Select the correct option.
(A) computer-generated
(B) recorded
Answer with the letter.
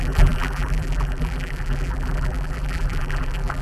A